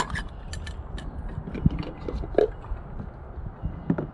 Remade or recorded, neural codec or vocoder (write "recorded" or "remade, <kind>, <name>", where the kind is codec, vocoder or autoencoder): recorded